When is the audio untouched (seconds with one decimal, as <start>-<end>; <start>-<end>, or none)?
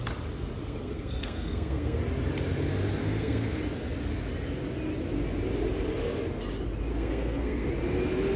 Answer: 0.0-0.6; 2.0-3.0; 3.6-6.9; 7.7-8.4